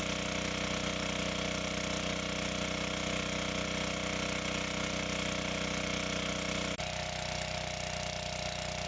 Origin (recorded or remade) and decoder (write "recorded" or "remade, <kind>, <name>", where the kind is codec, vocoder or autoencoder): recorded